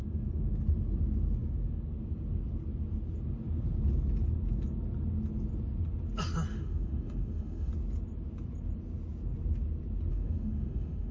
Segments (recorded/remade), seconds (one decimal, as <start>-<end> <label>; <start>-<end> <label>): 0.0-6.5 recorded; 6.5-7.7 remade; 7.7-10.1 recorded; 10.1-11.1 remade